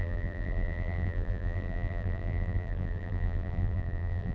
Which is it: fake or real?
fake